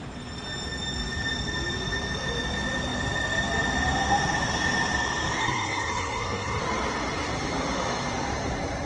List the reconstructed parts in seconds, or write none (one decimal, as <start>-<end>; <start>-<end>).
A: 5.4-6.6